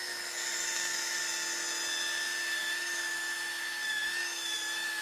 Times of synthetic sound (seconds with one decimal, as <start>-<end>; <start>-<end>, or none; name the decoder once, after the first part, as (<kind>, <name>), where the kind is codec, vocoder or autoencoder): 0.0-1.2 (autoencoder, DAC-VAE); 2.6-5.0